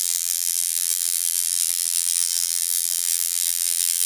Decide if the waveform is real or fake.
fake